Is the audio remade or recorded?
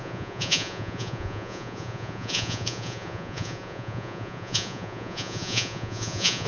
remade